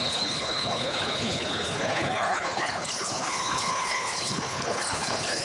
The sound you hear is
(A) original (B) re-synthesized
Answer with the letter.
B